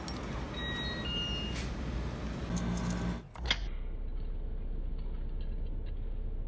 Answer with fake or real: real